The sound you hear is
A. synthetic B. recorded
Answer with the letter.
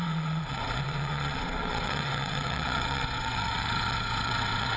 A